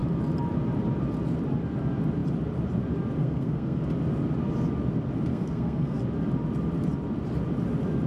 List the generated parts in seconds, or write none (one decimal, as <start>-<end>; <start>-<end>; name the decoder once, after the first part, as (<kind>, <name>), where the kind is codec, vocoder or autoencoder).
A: 3.2-3.8 (codec, SNAC); 5.3-6.0